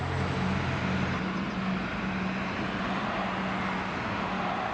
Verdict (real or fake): real